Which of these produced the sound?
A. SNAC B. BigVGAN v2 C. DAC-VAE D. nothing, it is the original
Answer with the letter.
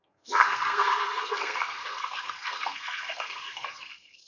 A